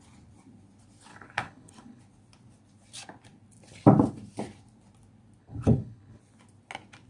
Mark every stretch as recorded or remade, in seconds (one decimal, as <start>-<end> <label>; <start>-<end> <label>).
0.0-1.1 recorded; 1.1-2.0 remade; 2.0-5.4 recorded; 5.4-6.2 remade; 6.2-7.1 recorded